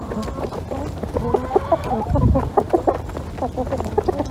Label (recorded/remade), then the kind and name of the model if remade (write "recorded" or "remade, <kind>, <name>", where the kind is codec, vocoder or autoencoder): recorded